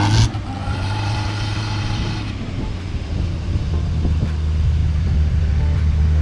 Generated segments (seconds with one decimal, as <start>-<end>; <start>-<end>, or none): 0.6-3.9; 4.8-5.4